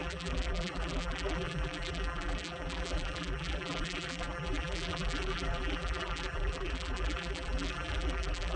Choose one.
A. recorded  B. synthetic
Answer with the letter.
B